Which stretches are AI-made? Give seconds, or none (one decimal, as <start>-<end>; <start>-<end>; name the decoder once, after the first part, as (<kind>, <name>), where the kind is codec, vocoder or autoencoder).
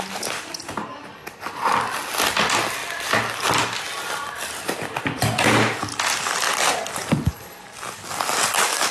none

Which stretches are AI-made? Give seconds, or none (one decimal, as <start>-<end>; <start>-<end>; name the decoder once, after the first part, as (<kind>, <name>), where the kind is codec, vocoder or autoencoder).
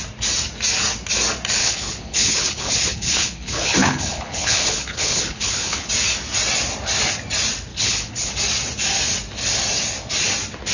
1.6-5.9 (codec, HILCodec); 7.7-8.3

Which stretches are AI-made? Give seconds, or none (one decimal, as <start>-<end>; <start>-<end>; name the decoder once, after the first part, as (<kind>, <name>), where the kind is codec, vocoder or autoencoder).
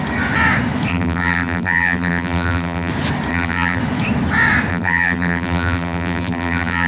0.9-2.9 (vocoder, BigVGAN v2); 3.3-3.8; 4.7-6.9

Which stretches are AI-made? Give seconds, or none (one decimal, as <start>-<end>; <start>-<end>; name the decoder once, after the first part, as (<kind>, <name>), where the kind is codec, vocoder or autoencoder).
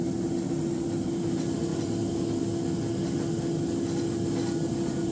none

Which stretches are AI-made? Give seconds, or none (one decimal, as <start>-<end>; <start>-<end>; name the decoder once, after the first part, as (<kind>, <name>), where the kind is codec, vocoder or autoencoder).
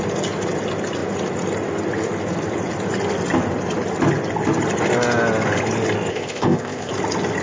6.1-6.9 (codec, ZipCodec)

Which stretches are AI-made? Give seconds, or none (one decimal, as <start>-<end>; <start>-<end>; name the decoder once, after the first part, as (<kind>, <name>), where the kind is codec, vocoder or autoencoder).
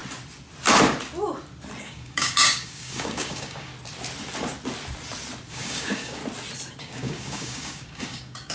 1.8-3.7 (codec, DAC); 5.5-6.2; 6.8-8.5